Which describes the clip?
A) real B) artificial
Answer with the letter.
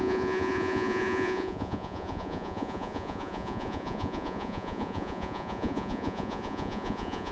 B